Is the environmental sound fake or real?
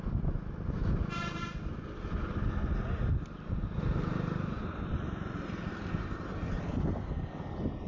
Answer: real